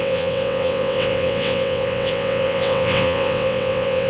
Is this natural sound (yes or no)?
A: no